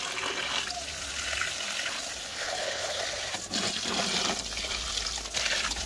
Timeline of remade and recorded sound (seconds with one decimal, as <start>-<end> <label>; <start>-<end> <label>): 0.0-2.3 recorded; 2.3-3.0 remade; 3.0-5.9 recorded